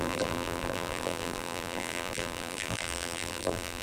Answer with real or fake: fake